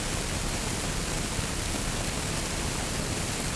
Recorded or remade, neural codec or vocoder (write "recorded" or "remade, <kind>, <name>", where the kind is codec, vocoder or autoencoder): recorded